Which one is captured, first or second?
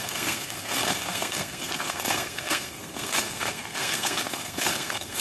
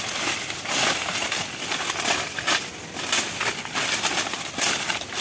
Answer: second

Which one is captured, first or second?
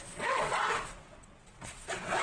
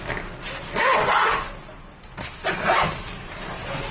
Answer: second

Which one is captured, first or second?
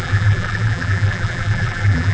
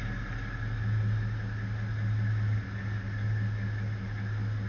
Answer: second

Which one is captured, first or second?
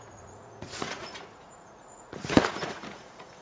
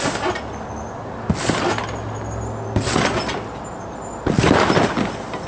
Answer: second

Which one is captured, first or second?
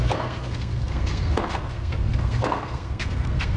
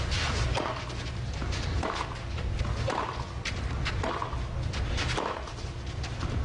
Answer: second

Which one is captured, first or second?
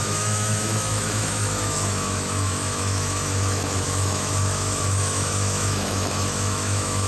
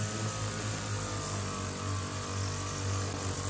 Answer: second